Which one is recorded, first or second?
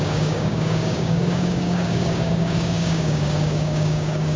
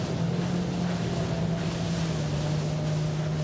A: second